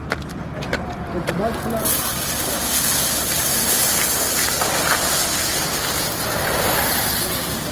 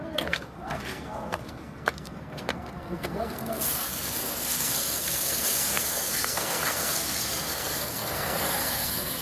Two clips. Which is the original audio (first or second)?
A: first